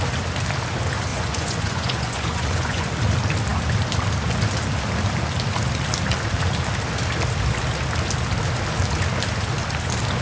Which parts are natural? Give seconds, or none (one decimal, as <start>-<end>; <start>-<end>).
0.0-1.1; 2.9-10.2